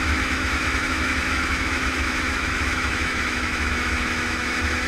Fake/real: fake